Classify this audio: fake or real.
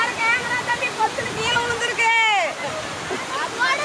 real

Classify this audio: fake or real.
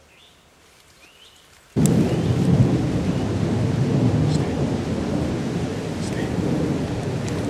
real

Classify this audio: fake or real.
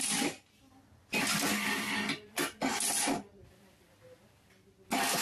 real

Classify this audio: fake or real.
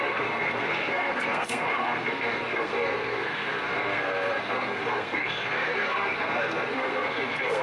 fake